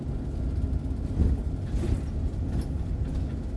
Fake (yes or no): no